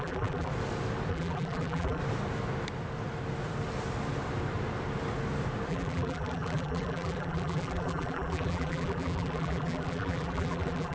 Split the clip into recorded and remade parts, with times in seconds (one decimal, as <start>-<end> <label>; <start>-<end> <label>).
0.0-0.5 remade; 0.5-1.1 recorded; 1.1-2.0 remade; 2.0-5.7 recorded; 5.7-10.9 remade